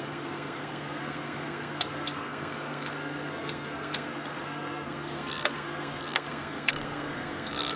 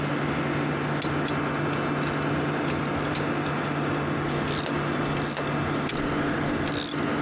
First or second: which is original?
second